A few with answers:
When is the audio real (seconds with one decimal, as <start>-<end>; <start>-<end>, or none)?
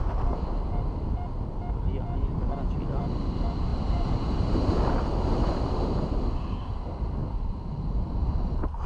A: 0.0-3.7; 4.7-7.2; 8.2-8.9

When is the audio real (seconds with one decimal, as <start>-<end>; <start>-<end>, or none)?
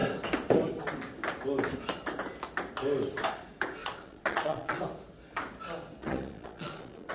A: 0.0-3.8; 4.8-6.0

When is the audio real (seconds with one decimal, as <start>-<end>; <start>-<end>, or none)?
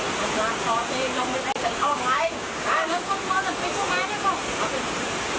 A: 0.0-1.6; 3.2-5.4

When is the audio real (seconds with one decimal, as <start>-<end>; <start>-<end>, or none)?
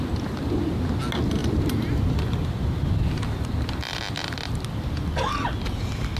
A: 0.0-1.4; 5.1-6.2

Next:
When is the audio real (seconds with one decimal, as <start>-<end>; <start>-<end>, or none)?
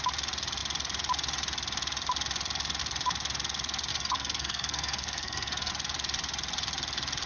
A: 0.0-3.9; 5.7-7.3